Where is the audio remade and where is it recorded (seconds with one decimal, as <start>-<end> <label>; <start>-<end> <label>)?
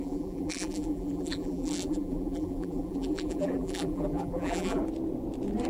0.0-4.8 remade; 4.8-5.7 recorded